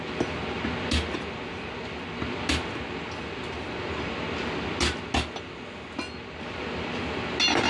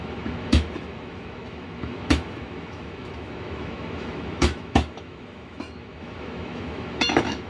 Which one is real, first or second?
first